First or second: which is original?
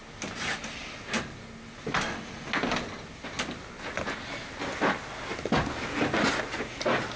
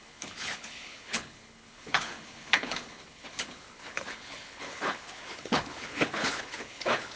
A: first